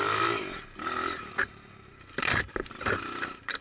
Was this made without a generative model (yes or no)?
no